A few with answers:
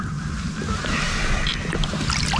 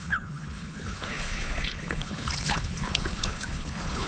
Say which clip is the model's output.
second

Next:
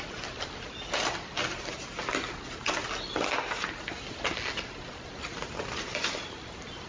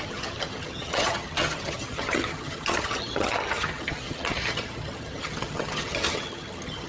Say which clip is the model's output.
second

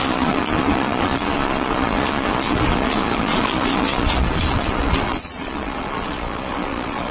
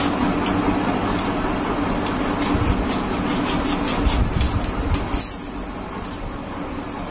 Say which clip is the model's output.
first